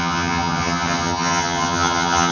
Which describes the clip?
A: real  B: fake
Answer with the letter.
B